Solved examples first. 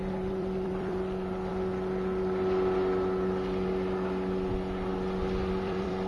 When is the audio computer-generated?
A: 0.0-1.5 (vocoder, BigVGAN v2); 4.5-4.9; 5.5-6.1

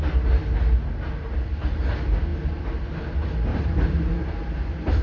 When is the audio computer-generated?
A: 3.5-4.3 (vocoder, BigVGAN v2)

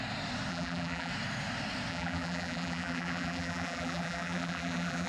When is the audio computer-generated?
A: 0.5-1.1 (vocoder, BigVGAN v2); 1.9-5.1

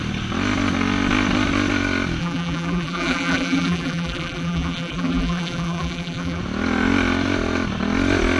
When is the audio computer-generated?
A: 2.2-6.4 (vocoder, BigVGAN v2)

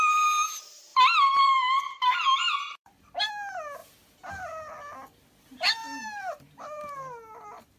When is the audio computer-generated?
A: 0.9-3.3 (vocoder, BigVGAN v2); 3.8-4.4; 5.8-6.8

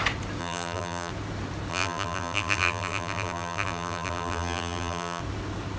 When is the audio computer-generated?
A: 0.4-1.1 (vocoder, BigVGAN v2); 1.7-5.2

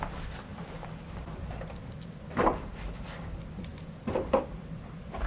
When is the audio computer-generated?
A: 3.7-5.3 (vocoder, BigVGAN v2)

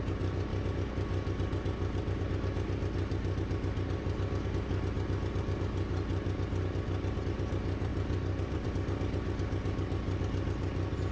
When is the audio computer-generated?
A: 7.9-8.7 (vocoder, BigVGAN v2)